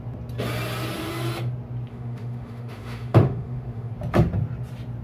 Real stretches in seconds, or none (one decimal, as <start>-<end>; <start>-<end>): 0.0-1.9; 3.9-5.0